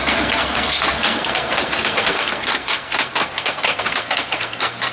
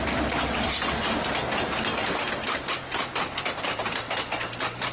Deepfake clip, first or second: first